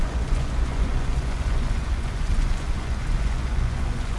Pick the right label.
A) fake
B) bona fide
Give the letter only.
A